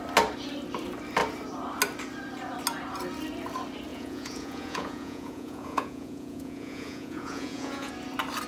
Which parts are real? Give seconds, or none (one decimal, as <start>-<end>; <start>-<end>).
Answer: 0.0-3.9; 7.9-8.5